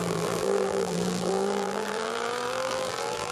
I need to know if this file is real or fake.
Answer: fake